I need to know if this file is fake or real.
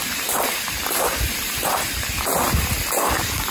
fake